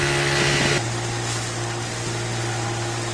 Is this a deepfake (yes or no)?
no